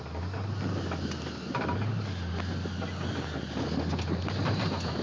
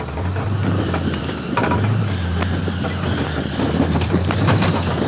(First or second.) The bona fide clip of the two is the first